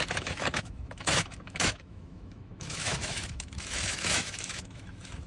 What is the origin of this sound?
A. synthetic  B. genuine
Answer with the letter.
A